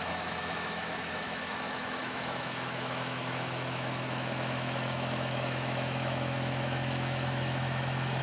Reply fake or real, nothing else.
fake